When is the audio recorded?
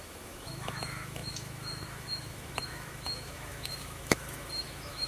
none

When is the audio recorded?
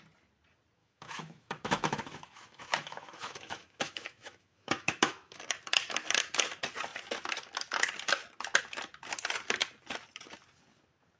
0.0-0.8; 5.4-11.2